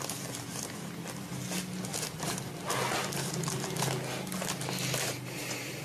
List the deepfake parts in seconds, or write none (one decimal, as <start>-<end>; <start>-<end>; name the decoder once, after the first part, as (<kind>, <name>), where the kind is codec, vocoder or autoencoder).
none